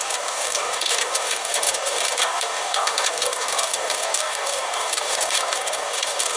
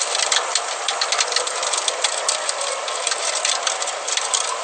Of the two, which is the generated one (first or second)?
first